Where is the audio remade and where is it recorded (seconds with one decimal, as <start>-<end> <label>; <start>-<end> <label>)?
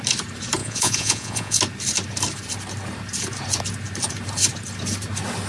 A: 0.0-0.6 recorded; 0.6-1.6 remade; 1.6-5.5 recorded